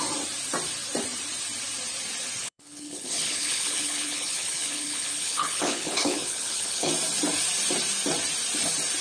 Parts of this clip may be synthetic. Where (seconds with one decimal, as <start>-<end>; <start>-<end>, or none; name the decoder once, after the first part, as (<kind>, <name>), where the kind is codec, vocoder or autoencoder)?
2.4-6.9 (codec, HILCodec)

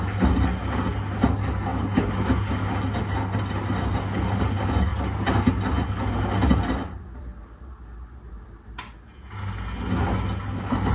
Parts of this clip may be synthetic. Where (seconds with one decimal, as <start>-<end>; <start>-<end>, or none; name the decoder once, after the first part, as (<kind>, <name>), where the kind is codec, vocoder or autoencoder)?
none

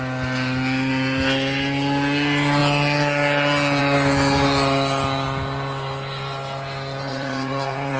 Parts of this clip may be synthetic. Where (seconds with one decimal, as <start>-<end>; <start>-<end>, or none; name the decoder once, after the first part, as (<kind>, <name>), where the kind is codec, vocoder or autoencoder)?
7.1-8.0 (vocoder, Vocos)

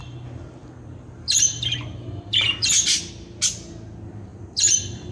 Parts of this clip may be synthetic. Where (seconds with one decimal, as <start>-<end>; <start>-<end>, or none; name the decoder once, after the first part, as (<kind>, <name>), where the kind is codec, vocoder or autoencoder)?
0.6-3.1 (vocoder, BigVGAN v2); 4.3-5.1

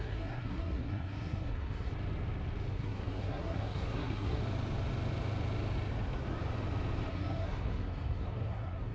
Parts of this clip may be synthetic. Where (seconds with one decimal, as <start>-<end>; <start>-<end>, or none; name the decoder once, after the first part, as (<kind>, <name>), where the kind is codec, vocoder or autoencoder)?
0.0-1.9 (codec, SNAC); 2.7-4.4; 7.1-8.9

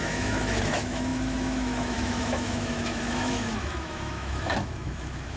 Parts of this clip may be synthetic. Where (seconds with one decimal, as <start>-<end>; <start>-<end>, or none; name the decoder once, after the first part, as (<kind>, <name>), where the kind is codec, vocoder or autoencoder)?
0.0-5.4 (autoencoder, DAC-VAE)